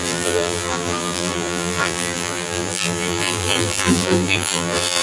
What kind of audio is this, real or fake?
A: fake